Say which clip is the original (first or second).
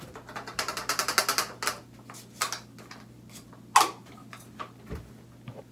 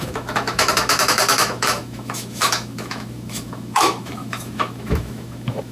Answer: first